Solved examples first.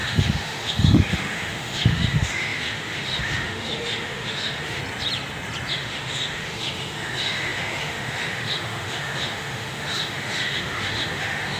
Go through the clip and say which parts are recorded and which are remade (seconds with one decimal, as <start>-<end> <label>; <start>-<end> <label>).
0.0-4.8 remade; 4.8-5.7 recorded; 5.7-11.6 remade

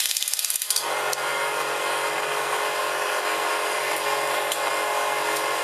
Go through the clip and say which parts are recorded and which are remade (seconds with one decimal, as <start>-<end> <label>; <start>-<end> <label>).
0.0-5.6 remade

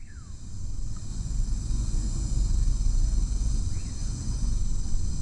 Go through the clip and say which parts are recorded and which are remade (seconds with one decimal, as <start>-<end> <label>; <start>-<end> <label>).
0.0-1.1 recorded; 1.1-3.6 remade; 3.6-4.0 recorded; 4.0-4.6 remade; 4.6-5.2 recorded

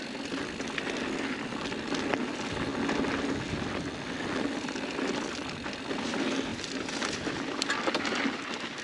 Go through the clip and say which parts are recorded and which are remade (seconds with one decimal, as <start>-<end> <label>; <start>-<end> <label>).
0.0-8.8 recorded

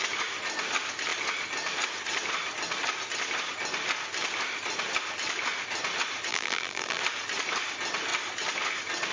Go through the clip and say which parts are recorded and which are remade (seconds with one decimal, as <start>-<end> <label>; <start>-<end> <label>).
0.0-6.3 recorded; 6.3-7.0 remade; 7.0-9.1 recorded

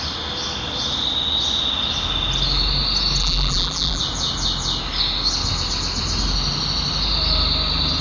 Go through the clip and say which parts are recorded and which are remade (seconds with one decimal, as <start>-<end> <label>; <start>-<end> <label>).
0.0-3.2 recorded; 3.2-4.0 remade; 4.0-8.0 recorded